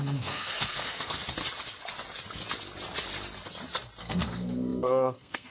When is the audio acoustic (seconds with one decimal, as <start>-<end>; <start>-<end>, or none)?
1.2-4.0